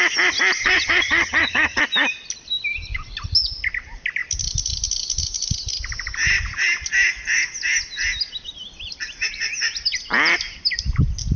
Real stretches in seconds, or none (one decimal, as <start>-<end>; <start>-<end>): 0.0-0.6; 1.8-11.4